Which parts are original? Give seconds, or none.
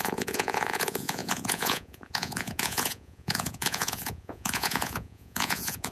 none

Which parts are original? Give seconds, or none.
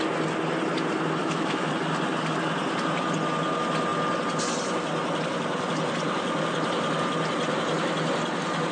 0.0-1.2; 1.7-8.7